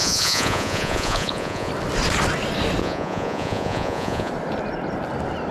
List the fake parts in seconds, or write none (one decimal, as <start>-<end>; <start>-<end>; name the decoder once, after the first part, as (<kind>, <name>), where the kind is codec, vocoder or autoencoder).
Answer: 0.0-1.7 (vocoder, Vocos); 2.8-4.3